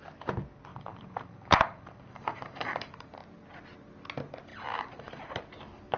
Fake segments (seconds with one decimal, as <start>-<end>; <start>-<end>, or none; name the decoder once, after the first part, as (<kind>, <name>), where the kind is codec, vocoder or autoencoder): 0.7-3.1 (vocoder, BigVGAN v2); 4.5-5.4